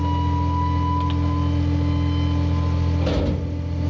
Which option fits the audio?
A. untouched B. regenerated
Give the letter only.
A